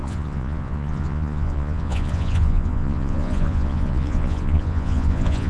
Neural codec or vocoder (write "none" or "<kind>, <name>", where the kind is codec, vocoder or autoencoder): vocoder, Vocos